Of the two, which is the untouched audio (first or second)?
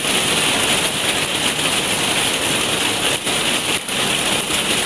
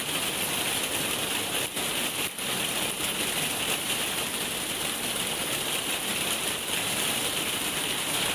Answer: first